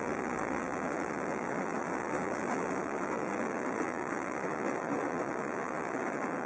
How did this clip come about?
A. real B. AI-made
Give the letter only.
B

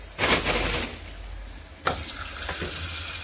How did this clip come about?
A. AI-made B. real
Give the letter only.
B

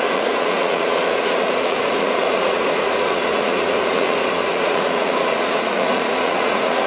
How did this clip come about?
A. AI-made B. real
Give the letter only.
A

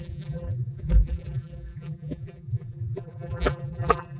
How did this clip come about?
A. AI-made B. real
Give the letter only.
A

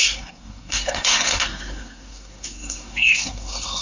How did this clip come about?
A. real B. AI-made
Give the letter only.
B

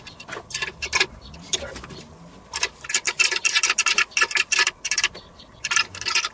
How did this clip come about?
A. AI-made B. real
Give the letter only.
B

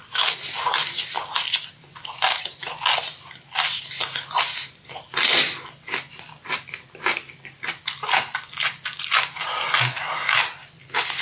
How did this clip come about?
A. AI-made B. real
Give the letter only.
B